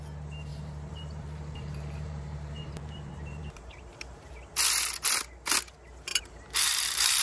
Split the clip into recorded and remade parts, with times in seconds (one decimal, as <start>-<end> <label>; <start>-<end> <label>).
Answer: 0.0-0.5 recorded; 0.5-4.3 remade; 4.3-6.1 recorded; 6.1-7.2 remade